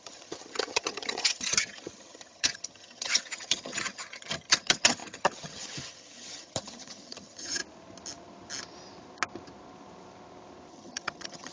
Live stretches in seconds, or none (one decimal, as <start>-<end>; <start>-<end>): 7.6-10.7